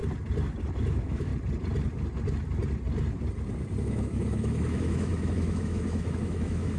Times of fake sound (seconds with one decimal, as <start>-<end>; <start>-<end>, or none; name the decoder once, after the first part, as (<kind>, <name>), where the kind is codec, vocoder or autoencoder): 0.8-1.3 (autoencoder, DAC-VAE); 3.8-6.8